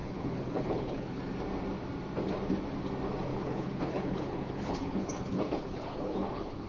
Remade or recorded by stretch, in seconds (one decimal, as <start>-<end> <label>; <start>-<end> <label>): 0.0-1.2 remade; 1.2-3.3 recorded; 3.3-6.7 remade